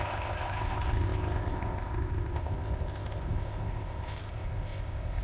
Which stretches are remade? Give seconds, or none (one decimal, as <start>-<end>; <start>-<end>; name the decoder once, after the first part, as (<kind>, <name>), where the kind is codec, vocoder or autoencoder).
0.0-5.2 (codec, ZipCodec)